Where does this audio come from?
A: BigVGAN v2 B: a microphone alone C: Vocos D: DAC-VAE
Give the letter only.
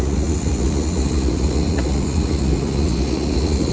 C